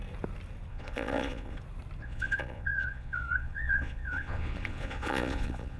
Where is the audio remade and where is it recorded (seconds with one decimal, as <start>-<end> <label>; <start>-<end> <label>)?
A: 0.0-0.7 recorded; 0.7-1.6 remade; 1.6-2.0 recorded; 2.0-5.8 remade